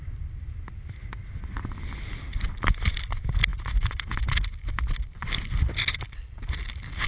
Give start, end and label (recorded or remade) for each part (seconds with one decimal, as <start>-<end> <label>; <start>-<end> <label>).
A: 0.0-1.0 recorded; 1.0-1.7 remade; 1.7-7.1 recorded